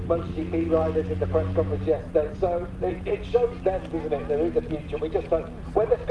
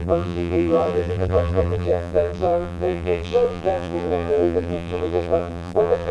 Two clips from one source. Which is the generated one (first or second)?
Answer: second